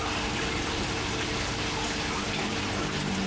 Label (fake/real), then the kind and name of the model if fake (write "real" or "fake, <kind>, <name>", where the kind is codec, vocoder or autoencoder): real